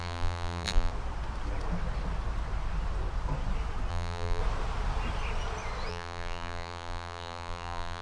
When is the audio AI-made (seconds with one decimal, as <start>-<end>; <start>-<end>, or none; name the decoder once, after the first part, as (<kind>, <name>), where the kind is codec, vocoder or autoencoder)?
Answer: 0.0-0.9 (vocoder, BigVGAN v2); 3.9-4.4; 5.9-8.0